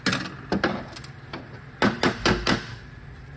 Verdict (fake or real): real